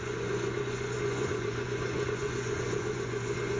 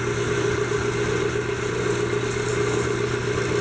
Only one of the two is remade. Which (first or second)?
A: first